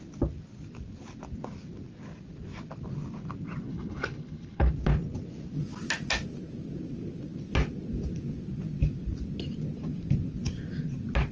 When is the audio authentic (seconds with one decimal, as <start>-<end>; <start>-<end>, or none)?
0.0-3.7; 4.7-11.3